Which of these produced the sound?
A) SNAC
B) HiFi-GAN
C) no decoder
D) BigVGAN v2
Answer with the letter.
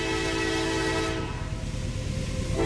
C